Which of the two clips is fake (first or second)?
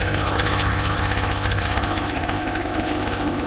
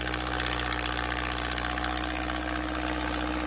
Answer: first